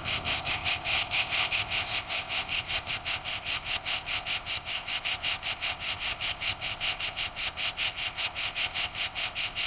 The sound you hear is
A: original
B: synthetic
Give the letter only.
B